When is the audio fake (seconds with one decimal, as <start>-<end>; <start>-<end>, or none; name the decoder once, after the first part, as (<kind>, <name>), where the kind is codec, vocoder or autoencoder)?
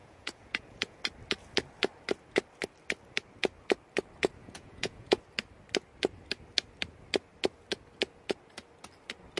0.0-1.0 (vocoder, Vocos); 4.4-5.2